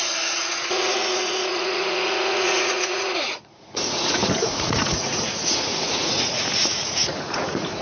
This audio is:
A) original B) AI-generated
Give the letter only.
B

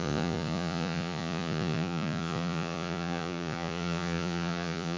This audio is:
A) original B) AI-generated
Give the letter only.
B